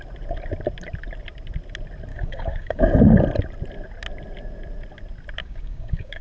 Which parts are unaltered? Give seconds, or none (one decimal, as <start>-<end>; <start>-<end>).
0.0-2.1; 2.8-5.4